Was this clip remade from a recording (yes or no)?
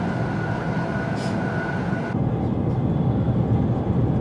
no